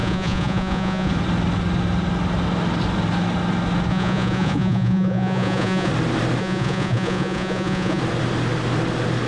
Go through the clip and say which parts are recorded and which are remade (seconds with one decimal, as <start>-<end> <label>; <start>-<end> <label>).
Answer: 0.0-1.1 remade; 1.1-3.9 recorded; 3.9-5.9 remade; 5.9-6.4 recorded; 6.4-8.0 remade; 8.0-9.3 recorded